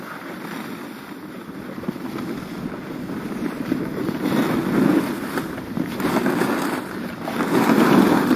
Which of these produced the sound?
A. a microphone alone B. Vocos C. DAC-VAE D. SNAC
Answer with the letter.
A